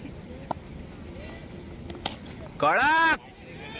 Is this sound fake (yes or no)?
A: no